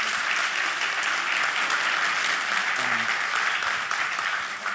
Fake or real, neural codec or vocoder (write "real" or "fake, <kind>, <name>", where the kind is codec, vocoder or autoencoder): real